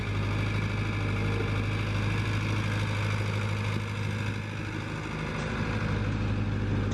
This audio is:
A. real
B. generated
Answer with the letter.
A